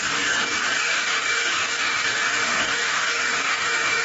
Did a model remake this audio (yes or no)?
yes